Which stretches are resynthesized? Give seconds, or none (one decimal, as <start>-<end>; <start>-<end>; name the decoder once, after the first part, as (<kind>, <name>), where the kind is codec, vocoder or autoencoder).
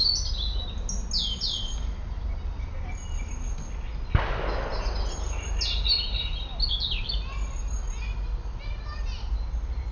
none